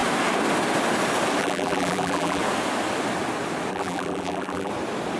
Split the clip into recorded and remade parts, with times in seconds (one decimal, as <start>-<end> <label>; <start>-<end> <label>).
0.0-1.4 recorded; 1.4-2.4 remade; 2.4-3.7 recorded; 3.7-4.7 remade; 4.7-5.2 recorded